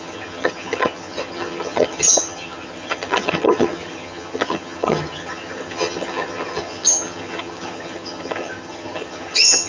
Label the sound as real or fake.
fake